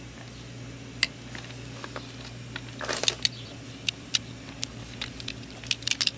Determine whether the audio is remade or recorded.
recorded